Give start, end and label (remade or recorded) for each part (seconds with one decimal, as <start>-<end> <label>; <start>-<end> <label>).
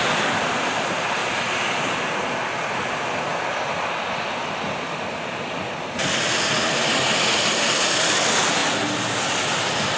0.0-10.0 remade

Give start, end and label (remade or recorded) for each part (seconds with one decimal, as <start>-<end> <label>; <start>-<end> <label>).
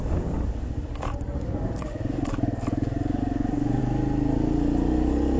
0.0-3.8 remade; 3.8-5.4 recorded